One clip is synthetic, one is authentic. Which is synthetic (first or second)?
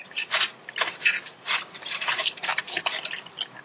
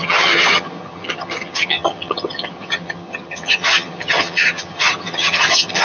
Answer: second